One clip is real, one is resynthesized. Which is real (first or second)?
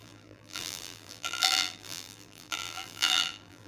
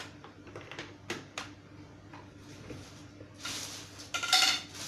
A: second